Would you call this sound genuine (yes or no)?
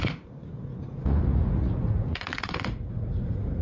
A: no